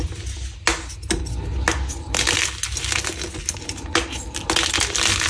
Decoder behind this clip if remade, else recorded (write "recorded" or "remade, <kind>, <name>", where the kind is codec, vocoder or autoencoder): recorded